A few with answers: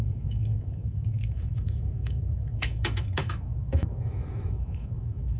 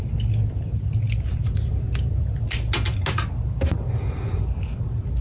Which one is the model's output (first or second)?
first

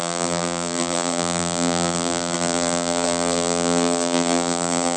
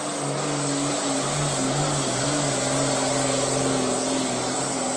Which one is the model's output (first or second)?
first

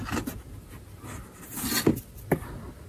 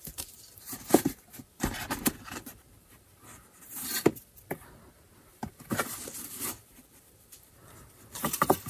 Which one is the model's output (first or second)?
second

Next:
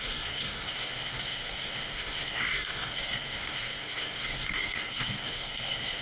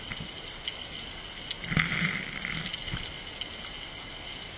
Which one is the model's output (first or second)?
first